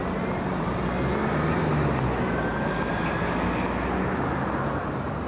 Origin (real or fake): real